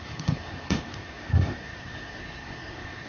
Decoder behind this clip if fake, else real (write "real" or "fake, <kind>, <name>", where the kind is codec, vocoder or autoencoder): fake, codec, SNAC